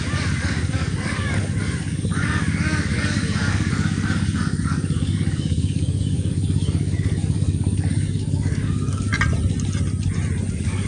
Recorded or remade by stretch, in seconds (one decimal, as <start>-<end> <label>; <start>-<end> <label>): 0.0-9.1 remade; 9.1-10.5 recorded; 10.5-10.9 remade

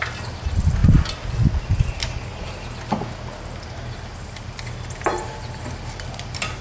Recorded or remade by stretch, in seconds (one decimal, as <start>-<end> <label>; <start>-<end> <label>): 0.0-6.6 recorded

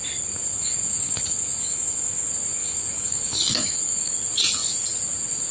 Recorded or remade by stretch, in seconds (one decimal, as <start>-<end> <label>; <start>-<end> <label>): 0.0-0.5 recorded; 0.5-2.1 remade; 2.1-2.6 recorded; 2.6-4.1 remade; 4.1-5.5 recorded

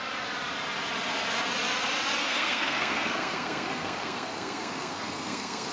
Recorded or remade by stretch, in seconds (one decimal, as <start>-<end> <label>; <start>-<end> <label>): 0.0-2.2 recorded; 2.2-5.7 remade

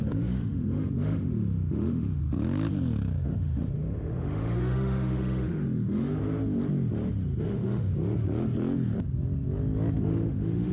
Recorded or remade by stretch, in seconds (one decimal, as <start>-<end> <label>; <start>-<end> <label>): 0.0-2.2 remade; 2.2-3.2 recorded; 3.2-6.2 remade; 6.2-7.4 recorded; 7.4-7.9 remade; 7.9-10.0 recorded; 10.0-10.7 remade

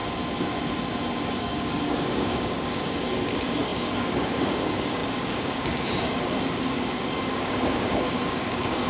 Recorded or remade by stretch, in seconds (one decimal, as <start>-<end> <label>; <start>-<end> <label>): 0.0-1.4 recorded; 1.4-8.9 remade

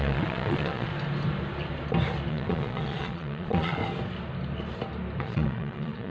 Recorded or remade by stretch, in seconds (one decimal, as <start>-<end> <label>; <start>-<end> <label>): 0.0-0.9 remade; 0.9-2.3 recorded; 2.3-3.8 remade; 3.8-5.2 recorded; 5.2-6.1 remade